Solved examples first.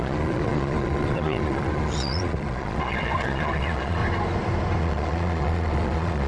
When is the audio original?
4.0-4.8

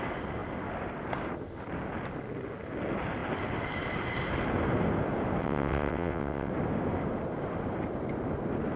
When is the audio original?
0.0-5.4; 6.5-8.8

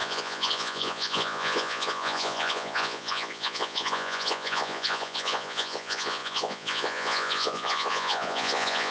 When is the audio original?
none

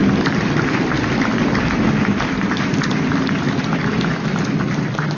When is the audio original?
0.0-5.2